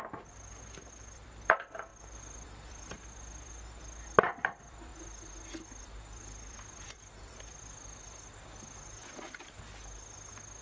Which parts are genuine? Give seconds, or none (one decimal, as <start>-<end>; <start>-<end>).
4.9-5.5; 9.0-10.6